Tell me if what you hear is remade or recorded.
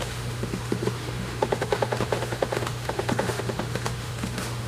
remade